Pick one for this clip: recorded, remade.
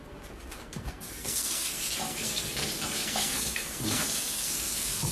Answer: remade